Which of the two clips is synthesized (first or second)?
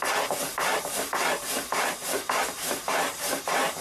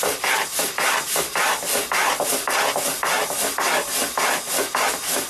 first